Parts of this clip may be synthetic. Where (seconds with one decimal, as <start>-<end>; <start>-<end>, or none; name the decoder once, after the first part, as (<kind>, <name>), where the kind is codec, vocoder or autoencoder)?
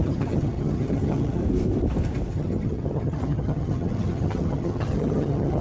0.0-1.4 (vocoder, HiFi-GAN); 2.3-5.6